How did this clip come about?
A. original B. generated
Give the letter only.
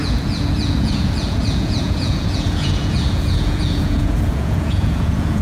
B